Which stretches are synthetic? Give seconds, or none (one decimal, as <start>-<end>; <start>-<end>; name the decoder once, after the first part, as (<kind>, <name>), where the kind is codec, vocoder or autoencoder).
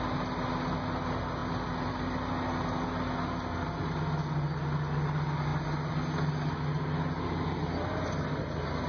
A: none